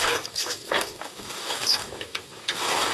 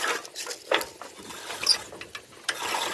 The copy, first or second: first